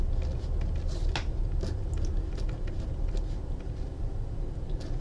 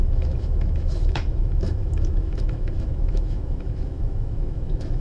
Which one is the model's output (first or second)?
second